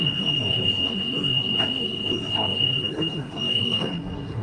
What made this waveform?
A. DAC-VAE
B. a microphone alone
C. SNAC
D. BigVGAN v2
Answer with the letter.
C